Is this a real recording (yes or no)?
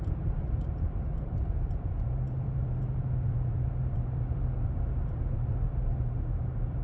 no